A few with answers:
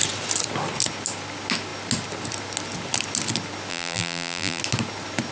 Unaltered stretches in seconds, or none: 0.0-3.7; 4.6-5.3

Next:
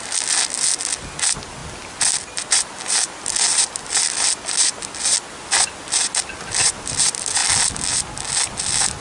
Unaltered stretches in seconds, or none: 0.0-9.0

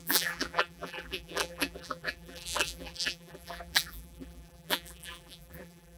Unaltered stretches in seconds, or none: none

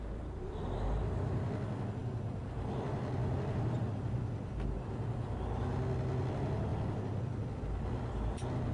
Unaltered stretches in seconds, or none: 0.0-8.7